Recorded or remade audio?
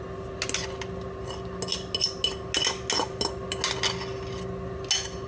recorded